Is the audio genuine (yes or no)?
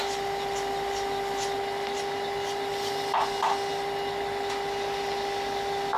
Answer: yes